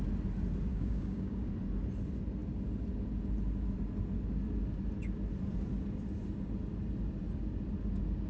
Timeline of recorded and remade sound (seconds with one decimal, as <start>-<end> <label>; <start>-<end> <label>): 0.0-0.7 recorded; 0.7-1.5 remade; 1.5-8.3 recorded